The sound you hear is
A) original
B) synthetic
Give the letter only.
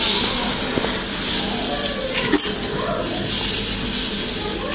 A